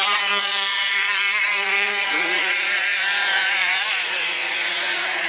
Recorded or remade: remade